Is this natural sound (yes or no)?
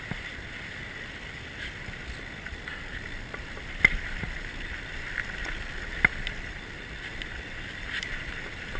yes